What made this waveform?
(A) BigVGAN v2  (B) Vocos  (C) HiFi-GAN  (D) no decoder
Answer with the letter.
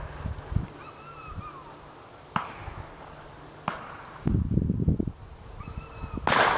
D